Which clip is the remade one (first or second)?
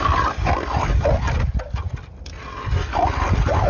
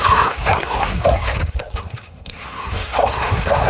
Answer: second